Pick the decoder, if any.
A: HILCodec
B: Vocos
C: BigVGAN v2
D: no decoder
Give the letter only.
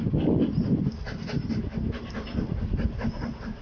D